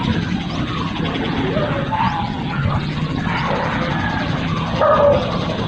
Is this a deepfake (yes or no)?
no